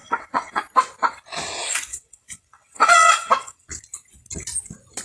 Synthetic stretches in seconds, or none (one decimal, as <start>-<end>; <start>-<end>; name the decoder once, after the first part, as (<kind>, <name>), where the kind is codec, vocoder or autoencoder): 0.0-0.6 (vocoder, WaveNeXt); 1.9-3.7